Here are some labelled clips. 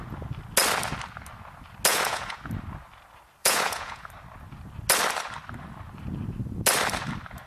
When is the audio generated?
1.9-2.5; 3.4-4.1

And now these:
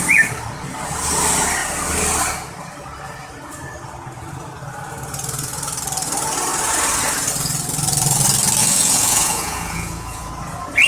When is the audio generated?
8.6-10.3

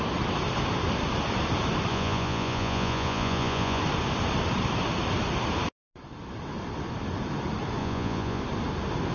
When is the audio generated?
1.9-3.8; 7.8-8.4

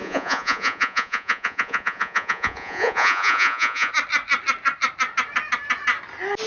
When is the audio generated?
0.0-3.9